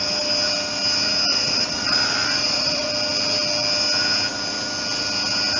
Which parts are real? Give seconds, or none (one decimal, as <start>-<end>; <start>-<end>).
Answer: 0.0-1.3; 2.9-5.6